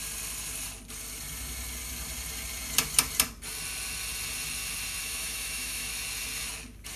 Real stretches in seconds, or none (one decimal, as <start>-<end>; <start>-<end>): 0.0-5.0; 5.9-7.0